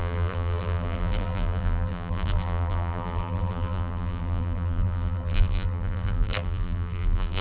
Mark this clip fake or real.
fake